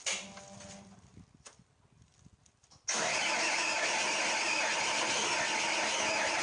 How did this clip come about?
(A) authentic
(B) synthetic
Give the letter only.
A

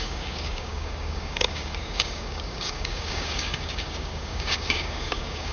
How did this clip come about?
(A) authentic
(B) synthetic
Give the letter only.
B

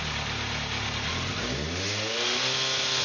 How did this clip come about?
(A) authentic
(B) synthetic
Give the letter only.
A